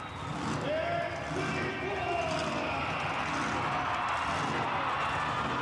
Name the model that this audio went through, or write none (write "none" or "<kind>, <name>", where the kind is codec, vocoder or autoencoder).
none